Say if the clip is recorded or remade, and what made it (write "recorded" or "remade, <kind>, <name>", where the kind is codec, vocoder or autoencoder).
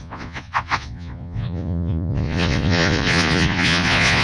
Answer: remade, vocoder, Vocos